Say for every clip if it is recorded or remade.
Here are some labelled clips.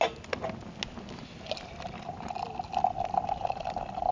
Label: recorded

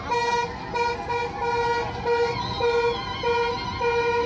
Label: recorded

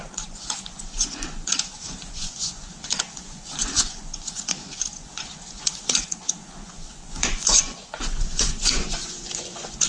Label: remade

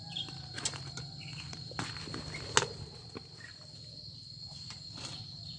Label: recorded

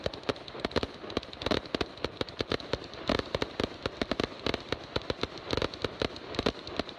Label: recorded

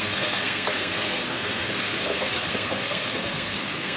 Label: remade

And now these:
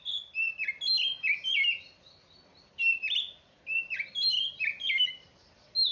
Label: recorded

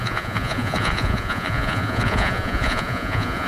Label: remade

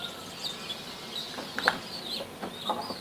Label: recorded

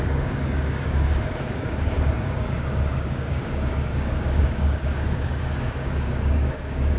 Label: remade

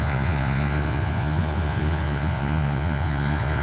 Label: remade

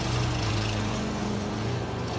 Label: remade